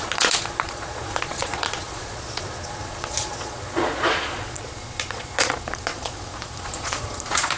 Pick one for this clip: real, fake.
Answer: fake